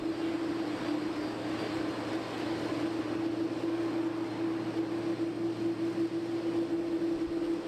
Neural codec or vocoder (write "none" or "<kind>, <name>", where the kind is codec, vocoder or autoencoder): none